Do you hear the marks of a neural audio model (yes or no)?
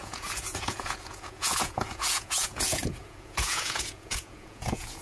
yes